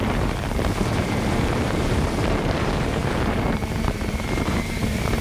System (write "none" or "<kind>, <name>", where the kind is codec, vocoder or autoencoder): vocoder, BigVGAN v2